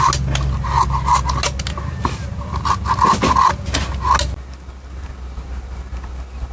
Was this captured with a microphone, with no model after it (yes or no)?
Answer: yes